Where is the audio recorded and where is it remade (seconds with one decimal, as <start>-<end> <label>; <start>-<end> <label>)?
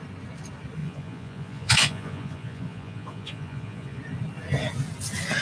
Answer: 0.0-0.8 recorded; 0.8-4.0 remade; 4.0-5.4 recorded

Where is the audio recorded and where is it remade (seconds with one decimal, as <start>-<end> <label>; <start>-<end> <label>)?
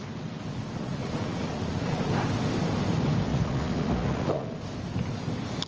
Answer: 0.0-0.5 recorded; 0.5-2.1 remade; 2.1-3.3 recorded; 3.3-4.5 remade; 4.5-5.7 recorded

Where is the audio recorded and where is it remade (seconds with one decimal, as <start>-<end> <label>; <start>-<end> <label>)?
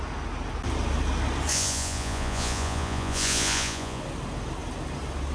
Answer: 0.0-1.5 recorded; 1.5-4.0 remade; 4.0-5.3 recorded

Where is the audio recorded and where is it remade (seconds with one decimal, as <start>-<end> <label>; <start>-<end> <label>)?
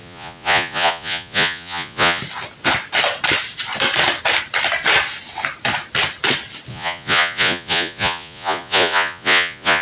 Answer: 0.0-2.2 remade; 2.2-6.7 recorded; 6.7-9.8 remade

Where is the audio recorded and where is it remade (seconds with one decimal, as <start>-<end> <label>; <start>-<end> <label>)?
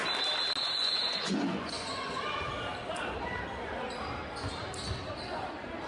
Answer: 0.0-0.6 recorded; 0.6-2.2 remade; 2.2-5.9 recorded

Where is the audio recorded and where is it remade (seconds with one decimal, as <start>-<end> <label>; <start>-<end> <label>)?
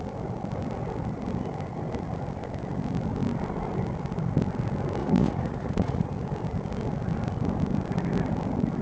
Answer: 0.0-5.0 recorded; 5.0-6.1 remade; 6.1-8.8 recorded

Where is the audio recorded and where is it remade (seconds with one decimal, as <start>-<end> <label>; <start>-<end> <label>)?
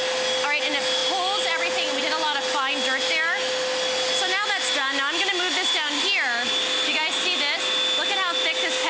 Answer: 0.0-8.9 recorded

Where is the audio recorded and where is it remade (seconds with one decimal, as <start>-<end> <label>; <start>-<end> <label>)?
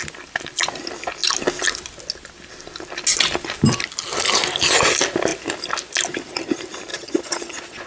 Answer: 0.0-6.9 recorded; 6.9-7.9 remade